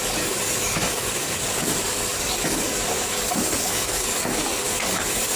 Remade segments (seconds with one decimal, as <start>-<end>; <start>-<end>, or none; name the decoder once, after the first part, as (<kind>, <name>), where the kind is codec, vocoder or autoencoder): 0.0-5.4 (codec, DAC)